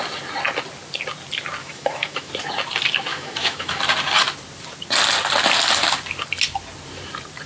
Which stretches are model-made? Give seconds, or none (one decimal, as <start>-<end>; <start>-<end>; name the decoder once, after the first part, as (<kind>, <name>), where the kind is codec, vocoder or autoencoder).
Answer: 1.6-2.3 (autoencoder, DAC-VAE); 3.1-3.8